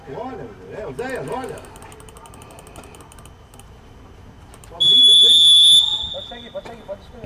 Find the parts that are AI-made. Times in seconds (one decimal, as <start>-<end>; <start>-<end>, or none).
none